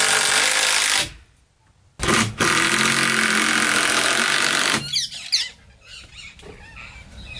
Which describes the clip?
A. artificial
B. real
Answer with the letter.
B